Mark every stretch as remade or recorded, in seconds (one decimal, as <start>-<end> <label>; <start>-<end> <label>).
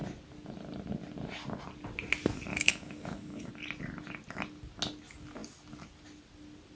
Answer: 0.0-2.5 recorded; 2.5-3.5 remade; 3.5-6.8 recorded